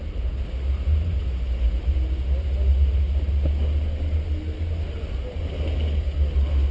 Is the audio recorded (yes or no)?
yes